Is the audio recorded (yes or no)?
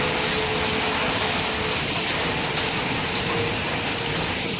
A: yes